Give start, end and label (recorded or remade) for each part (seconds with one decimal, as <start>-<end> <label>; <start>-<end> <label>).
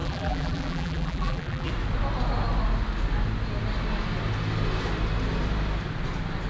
0.0-1.7 remade; 1.7-6.5 recorded